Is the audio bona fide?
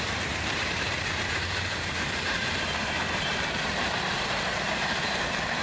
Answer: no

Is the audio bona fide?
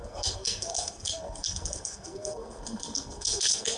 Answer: no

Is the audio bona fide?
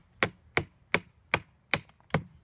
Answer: yes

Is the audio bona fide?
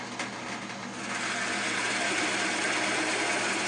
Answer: yes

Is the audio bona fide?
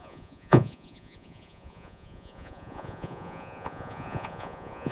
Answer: no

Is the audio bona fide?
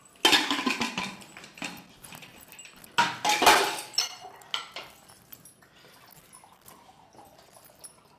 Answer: yes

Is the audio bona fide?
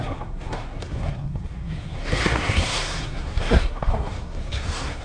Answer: no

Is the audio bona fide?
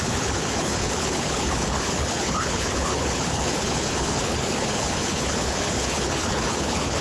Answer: no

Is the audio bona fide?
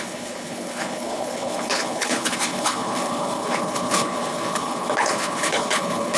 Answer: no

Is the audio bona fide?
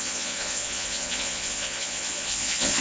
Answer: no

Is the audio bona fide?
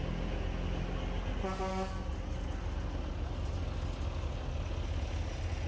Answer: yes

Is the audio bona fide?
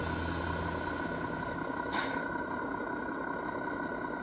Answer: yes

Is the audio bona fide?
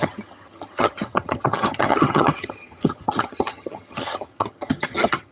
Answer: no